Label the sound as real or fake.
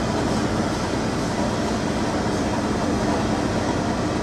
real